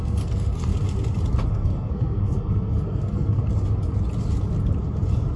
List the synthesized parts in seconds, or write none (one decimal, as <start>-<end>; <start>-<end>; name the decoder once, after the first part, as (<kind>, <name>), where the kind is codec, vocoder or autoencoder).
0.0-0.7 (codec, SNAC); 1.5-3.4